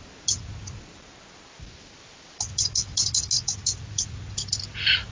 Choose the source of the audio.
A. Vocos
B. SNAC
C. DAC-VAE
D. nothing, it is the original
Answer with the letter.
D